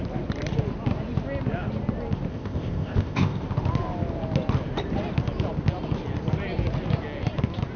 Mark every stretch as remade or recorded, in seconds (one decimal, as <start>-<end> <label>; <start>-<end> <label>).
0.0-2.3 recorded; 2.3-3.4 remade; 3.4-7.8 recorded